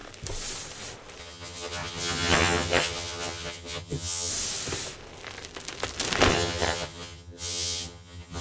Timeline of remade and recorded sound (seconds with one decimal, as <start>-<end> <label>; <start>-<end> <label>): 0.0-1.2 recorded; 1.2-4.3 remade; 4.3-6.3 recorded; 6.3-8.4 remade

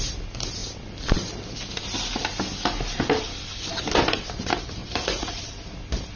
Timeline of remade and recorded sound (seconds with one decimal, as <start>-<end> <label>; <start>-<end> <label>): 0.0-4.8 recorded; 4.8-5.4 remade; 5.4-6.2 recorded